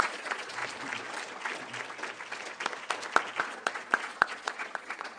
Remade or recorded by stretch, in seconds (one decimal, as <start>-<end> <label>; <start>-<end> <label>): 0.0-0.6 remade; 0.6-3.4 recorded; 3.4-5.2 remade